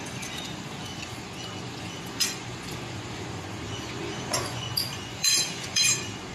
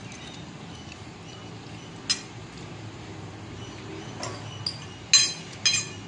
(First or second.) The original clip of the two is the second